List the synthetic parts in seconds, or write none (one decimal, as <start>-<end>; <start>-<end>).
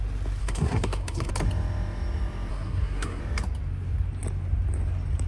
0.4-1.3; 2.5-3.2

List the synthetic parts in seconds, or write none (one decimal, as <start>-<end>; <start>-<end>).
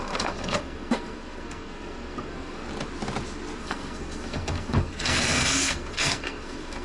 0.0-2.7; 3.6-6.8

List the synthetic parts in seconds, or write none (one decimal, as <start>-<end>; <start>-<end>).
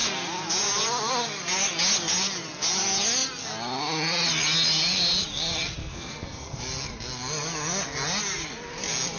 5.8-6.6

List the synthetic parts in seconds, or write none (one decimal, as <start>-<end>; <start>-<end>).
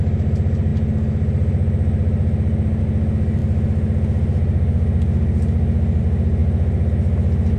none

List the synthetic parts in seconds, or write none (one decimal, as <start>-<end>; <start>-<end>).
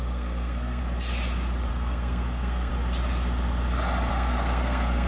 0.0-0.8; 1.7-2.7; 4.1-5.1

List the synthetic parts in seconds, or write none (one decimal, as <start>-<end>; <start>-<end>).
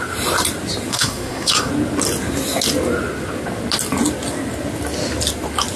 0.9-1.7